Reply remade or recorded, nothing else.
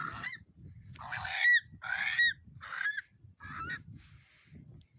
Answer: recorded